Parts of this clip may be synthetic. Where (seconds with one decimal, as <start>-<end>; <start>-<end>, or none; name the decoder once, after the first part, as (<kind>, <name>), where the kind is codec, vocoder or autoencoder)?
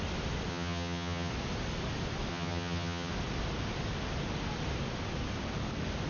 0.5-1.3 (vocoder, HiFi-GAN); 2.3-3.1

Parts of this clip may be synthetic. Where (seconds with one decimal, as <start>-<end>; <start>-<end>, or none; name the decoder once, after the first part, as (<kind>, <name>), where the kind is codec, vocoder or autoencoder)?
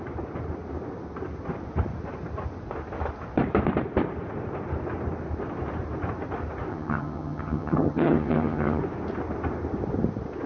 6.7-8.8 (vocoder, HiFi-GAN)